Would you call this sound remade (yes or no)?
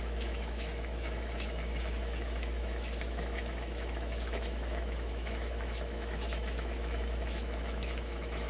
yes